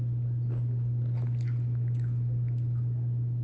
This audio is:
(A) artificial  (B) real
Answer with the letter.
B